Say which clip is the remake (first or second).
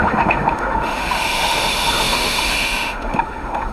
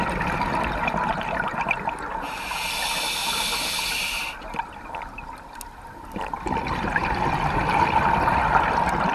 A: first